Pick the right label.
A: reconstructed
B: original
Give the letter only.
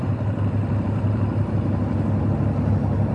B